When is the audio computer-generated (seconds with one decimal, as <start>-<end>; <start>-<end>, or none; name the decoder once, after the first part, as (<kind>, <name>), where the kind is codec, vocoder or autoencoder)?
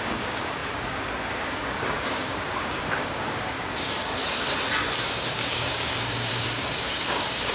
0.0-4.1 (codec, DAC); 5.0-7.5